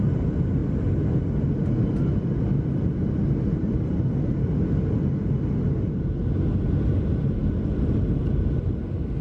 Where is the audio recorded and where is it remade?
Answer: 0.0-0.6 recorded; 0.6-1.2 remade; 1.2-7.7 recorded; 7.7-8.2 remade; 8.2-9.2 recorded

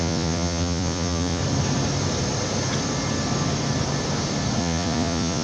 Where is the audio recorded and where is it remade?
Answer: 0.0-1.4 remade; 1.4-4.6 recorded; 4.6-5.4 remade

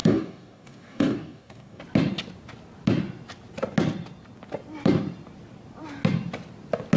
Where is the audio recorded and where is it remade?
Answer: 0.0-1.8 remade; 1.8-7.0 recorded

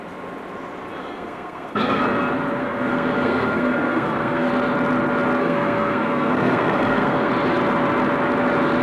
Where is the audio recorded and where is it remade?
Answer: 0.0-1.0 recorded; 1.0-2.0 remade; 2.0-2.6 recorded; 2.6-4.5 remade; 4.5-5.4 recorded; 5.4-7.3 remade; 7.3-8.8 recorded

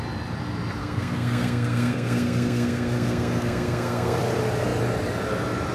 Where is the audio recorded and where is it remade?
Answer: 0.0-0.8 recorded; 0.8-4.2 remade; 4.2-5.7 recorded